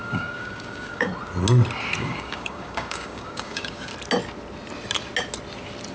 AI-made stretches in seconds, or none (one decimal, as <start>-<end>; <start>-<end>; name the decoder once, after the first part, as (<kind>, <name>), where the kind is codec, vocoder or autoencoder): 0.0-1.1 (codec, DAC); 2.0-3.9